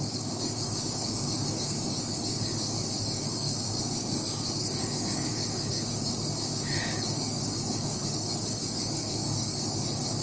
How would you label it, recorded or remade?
remade